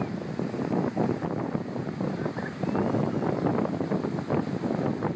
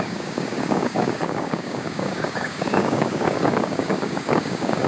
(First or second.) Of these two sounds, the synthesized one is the second